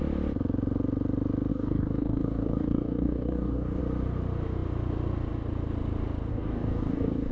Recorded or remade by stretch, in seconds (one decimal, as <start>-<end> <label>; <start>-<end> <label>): 0.0-1.5 recorded; 1.5-3.8 remade; 3.8-6.3 recorded; 6.3-7.3 remade

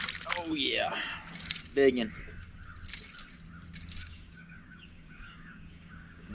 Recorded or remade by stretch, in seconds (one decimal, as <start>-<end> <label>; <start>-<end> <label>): 0.0-4.0 recorded; 4.0-6.3 remade

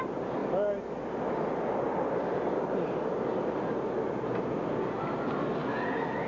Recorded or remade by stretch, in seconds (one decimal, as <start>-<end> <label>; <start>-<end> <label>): 0.0-6.3 recorded

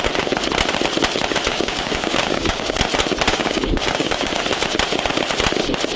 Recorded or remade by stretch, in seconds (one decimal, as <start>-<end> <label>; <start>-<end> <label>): 0.0-1.5 recorded; 1.5-2.8 remade; 2.8-3.3 recorded; 3.3-4.4 remade; 4.4-6.0 recorded